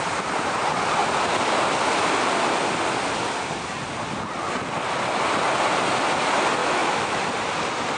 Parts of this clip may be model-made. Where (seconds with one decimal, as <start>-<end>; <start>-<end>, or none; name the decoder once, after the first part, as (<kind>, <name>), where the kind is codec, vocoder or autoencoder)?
6.6-7.2 (autoencoder, DAC-VAE)